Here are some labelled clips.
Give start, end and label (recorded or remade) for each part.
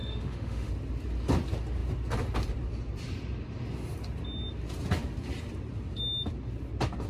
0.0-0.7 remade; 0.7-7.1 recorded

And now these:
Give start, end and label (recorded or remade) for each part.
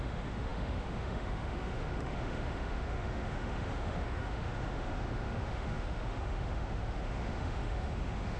0.0-8.4 remade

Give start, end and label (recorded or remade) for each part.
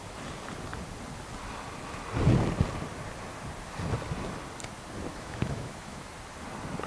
0.0-5.1 recorded; 5.1-6.0 remade; 6.0-6.9 recorded